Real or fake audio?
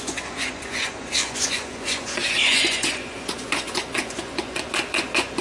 fake